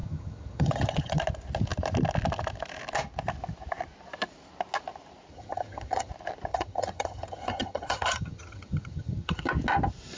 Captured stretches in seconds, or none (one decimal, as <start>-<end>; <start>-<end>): 1.2-5.3; 6.1-6.5; 9.4-10.2